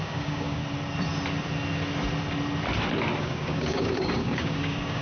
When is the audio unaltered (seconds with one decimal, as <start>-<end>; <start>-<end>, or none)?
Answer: 0.6-3.2